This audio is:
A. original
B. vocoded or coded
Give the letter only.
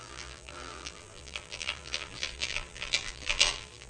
B